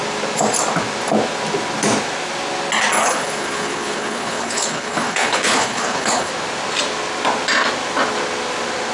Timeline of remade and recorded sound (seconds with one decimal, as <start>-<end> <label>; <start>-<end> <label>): 0.0-3.0 recorded; 3.0-6.3 remade; 6.3-8.9 recorded